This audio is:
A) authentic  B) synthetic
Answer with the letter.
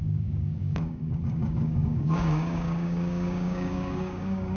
B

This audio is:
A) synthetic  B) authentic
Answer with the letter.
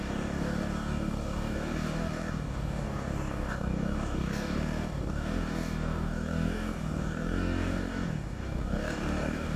A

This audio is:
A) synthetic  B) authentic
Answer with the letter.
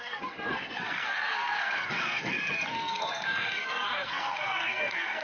A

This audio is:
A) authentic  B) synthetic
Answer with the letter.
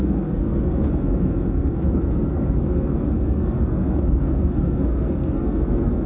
B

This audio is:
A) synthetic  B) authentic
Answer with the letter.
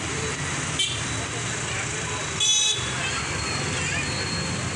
B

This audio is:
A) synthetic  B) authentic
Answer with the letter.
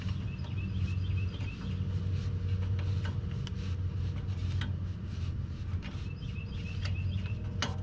B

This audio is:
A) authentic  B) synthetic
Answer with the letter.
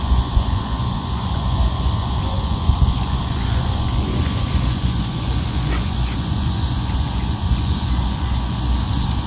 B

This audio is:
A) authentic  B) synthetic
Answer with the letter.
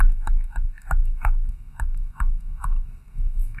B